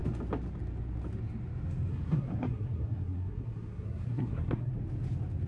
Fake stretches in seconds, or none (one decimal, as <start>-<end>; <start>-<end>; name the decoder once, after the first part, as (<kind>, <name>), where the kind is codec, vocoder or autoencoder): 1.9-4.7 (codec, SNAC)